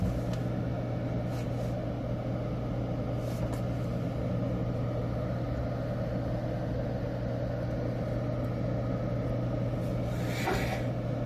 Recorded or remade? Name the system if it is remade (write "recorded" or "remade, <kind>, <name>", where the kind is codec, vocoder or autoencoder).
recorded